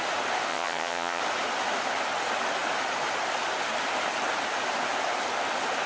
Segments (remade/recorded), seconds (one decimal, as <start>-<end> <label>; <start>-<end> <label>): 0.0-0.5 recorded; 0.5-1.2 remade; 1.2-5.9 recorded